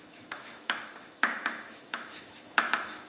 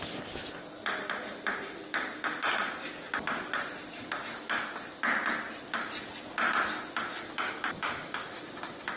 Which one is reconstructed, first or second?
first